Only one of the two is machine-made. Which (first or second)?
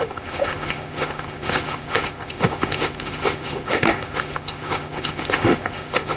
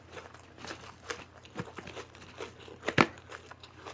first